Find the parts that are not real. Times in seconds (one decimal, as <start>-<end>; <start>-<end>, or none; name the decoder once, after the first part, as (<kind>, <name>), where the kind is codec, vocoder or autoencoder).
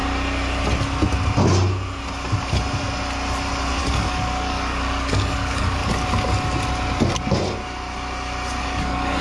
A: 3.8-5.8 (codec, DAC); 8.6-9.2